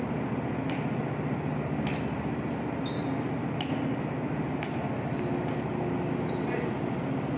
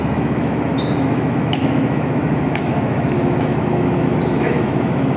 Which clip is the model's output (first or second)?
second